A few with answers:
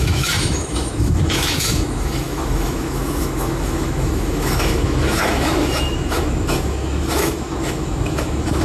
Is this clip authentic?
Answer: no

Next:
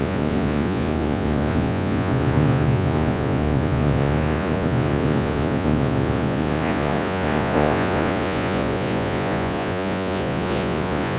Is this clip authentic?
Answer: no